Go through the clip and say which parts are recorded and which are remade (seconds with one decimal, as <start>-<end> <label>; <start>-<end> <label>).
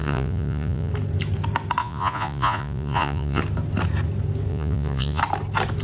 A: 0.0-0.9 remade; 0.9-1.8 recorded; 1.8-3.4 remade; 3.4-4.5 recorded; 4.5-5.2 remade; 5.2-5.8 recorded